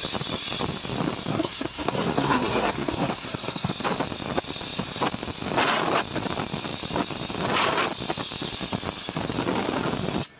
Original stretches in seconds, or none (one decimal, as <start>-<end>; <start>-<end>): 0.0-1.3; 3.7-10.4